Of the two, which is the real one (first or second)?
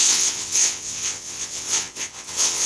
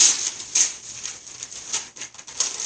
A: second